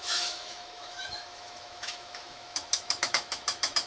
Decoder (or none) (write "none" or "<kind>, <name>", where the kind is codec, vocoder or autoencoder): autoencoder, DAC-VAE